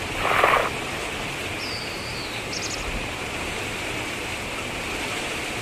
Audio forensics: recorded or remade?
recorded